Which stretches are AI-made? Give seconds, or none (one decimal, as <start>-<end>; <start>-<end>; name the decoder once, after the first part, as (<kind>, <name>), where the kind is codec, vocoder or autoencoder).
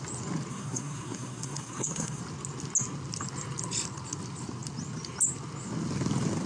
0.5-2.2 (codec, SNAC)